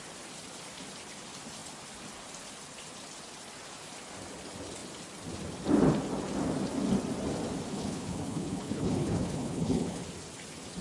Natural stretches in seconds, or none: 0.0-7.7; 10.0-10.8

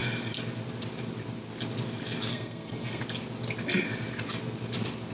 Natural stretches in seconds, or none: 0.0-2.3; 3.0-5.1

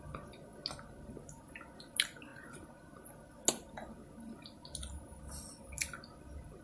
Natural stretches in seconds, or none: 0.0-6.6

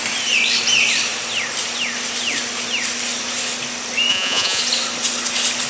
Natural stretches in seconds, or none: 0.0-4.1; 4.6-5.7

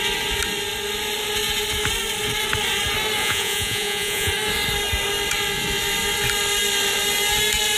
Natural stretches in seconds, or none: 0.0-3.2; 4.3-7.8

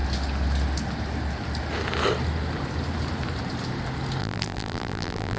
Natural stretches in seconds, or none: 0.0-4.2

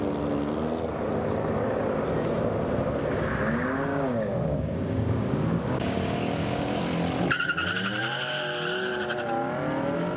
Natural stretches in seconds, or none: 0.0-3.9; 6.8-10.2